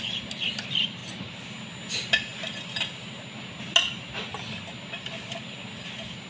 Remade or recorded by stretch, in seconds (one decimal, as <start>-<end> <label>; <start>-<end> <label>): 0.0-6.3 recorded